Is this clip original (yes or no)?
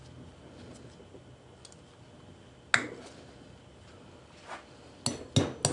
yes